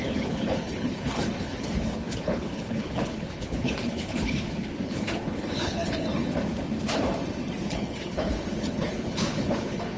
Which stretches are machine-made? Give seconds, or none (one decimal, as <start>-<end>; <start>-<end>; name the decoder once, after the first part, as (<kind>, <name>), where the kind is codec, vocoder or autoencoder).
0.0-6.1 (codec, HILCodec); 7.6-10.0